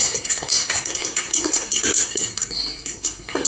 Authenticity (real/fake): fake